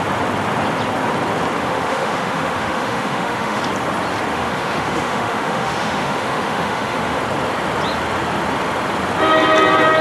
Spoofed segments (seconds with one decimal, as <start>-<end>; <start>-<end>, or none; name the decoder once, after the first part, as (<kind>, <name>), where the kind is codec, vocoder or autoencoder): 1.6-3.6 (autoencoder, DAC-VAE); 4.3-7.2